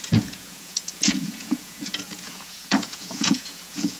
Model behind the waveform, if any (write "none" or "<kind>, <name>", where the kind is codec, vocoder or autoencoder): vocoder, Vocos